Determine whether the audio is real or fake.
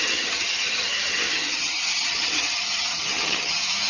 fake